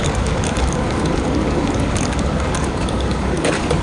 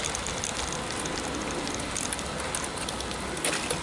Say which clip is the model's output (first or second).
first